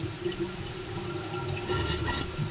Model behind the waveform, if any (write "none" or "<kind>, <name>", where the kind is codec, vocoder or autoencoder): none